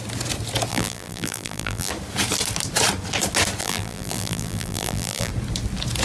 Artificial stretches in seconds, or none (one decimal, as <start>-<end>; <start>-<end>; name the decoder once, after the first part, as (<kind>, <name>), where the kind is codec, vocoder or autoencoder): 0.7-1.9 (vocoder, BigVGAN v2); 3.6-5.3